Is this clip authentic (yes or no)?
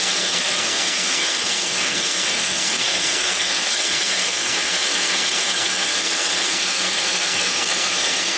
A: no